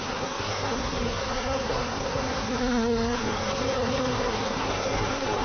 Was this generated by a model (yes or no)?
yes